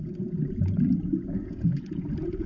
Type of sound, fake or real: fake